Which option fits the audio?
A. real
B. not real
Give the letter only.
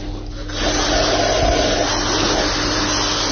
A